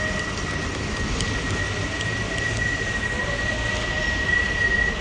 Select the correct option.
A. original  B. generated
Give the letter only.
A